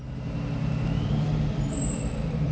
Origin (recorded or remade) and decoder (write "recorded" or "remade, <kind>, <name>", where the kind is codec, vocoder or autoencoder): recorded